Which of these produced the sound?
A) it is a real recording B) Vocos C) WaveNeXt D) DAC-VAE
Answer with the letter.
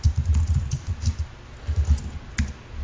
A